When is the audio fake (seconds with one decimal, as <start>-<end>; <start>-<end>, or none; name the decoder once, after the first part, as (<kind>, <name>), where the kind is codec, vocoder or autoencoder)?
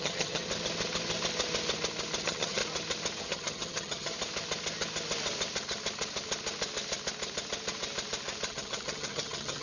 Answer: 0.0-0.4 (vocoder, HiFi-GAN); 2.2-2.6; 3.2-4.1; 8.5-9.6